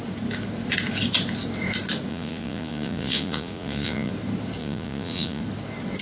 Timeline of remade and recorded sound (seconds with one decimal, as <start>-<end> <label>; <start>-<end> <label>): 0.0-2.1 recorded; 2.1-4.1 remade; 4.1-4.6 recorded; 4.6-5.4 remade; 5.4-6.0 recorded